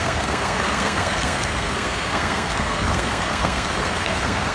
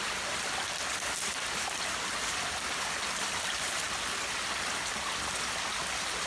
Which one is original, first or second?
second